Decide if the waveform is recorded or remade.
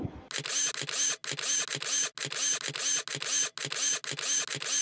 recorded